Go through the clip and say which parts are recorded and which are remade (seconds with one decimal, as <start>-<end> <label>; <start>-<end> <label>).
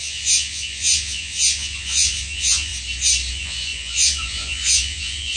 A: 0.0-2.7 remade; 2.7-3.3 recorded; 3.3-5.4 remade